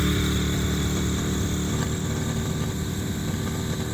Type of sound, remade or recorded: recorded